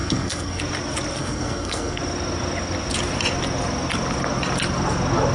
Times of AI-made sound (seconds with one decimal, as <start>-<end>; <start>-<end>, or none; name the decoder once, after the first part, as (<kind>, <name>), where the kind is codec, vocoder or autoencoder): 0.0-0.6 (codec, SNAC); 1.2-2.0